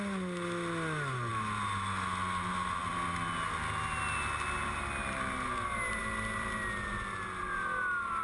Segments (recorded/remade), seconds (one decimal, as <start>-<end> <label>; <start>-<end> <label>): 0.0-8.2 recorded